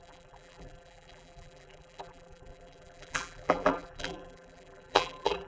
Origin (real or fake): fake